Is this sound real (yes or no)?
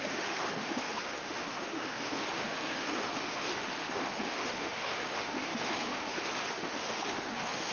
no